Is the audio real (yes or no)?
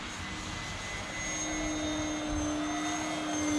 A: yes